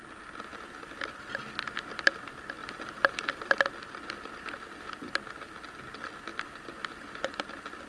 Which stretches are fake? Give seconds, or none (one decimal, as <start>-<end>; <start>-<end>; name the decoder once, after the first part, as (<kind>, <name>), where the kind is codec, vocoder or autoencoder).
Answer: 2.6-3.6 (vocoder, BigVGAN v2); 6.3-7.5